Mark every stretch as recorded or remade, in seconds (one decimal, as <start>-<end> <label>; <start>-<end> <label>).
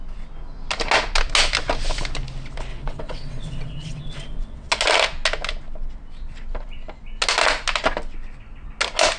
0.0-2.7 recorded; 2.7-4.7 remade; 4.7-9.2 recorded